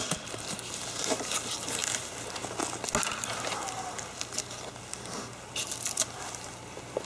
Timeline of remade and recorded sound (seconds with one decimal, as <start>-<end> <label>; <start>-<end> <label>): 0.0-7.0 recorded